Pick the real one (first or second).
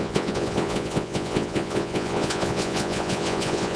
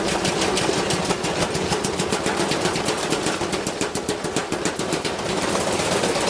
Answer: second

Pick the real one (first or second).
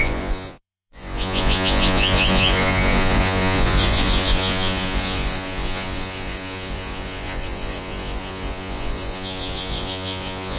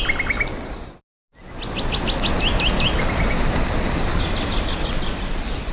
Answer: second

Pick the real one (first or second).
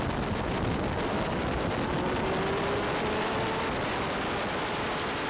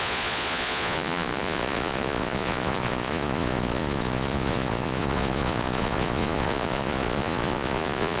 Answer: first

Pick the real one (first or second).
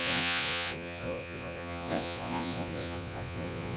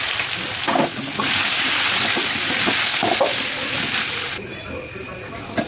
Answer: second